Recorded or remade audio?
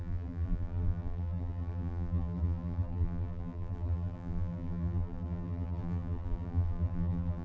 remade